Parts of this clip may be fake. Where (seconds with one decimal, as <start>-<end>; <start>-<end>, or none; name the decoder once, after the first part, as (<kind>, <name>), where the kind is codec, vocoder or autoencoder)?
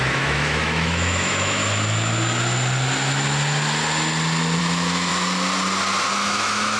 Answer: 0.0-1.6 (autoencoder, DAC-VAE); 4.6-5.1; 6.1-6.8